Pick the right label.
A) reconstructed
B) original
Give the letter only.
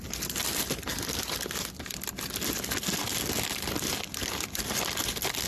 B